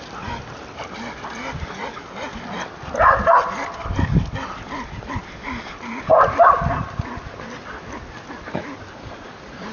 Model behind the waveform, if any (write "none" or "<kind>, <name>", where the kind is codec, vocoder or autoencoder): none